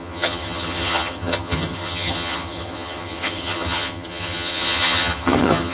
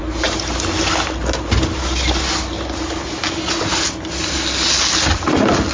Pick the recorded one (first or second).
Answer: second